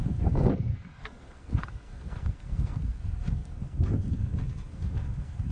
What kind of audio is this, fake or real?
fake